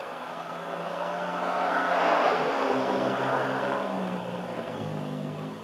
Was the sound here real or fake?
fake